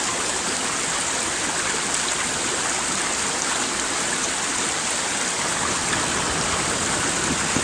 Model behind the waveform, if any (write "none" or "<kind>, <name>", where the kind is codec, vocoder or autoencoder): none